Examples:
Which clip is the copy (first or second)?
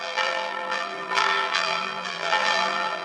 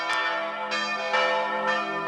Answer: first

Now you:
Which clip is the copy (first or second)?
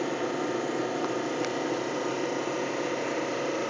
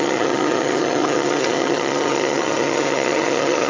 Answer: second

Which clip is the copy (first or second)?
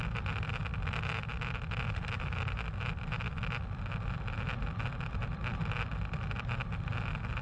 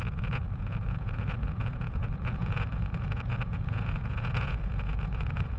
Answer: second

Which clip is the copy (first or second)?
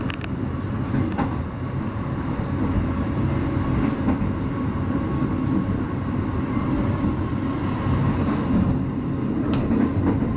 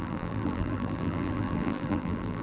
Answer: second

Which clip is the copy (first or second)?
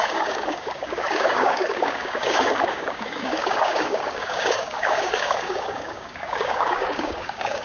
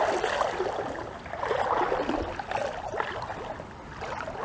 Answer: first